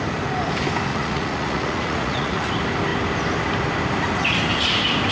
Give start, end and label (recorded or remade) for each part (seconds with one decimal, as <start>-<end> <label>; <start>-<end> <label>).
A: 0.0-0.9 recorded; 0.9-2.5 remade; 2.5-5.1 recorded